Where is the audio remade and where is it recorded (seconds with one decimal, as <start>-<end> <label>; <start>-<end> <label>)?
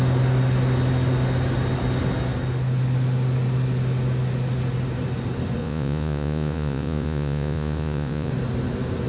0.0-5.6 recorded; 5.6-8.3 remade; 8.3-9.1 recorded